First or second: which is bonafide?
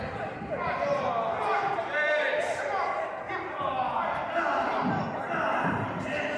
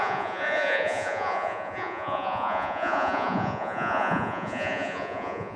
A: first